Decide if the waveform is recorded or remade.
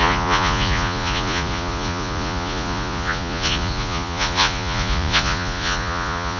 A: remade